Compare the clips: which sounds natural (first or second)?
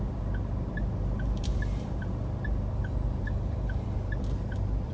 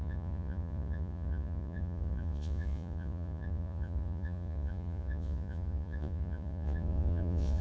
first